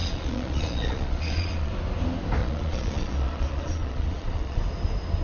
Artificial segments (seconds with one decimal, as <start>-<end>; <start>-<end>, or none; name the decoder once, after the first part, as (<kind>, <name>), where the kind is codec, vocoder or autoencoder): 0.0-1.7 (vocoder, Vocos); 2.4-4.6